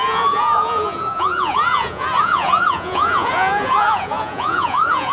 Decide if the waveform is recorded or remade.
remade